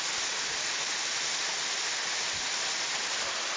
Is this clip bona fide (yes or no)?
yes